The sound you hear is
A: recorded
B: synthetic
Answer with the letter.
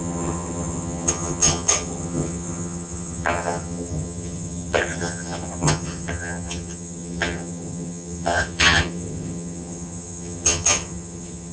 B